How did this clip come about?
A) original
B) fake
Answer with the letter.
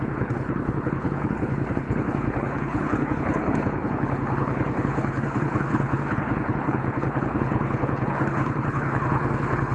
B